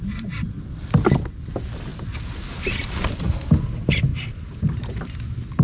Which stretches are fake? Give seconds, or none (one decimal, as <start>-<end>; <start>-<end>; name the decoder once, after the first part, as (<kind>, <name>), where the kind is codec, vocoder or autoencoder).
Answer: none